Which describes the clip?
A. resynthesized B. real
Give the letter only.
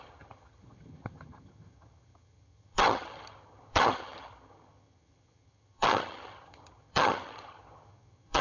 A